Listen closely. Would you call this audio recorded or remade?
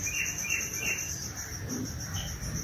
remade